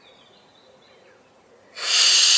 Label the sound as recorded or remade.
remade